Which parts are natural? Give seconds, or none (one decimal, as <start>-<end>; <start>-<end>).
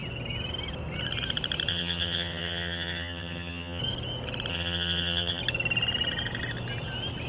0.0-1.7; 3.8-4.5; 5.4-7.3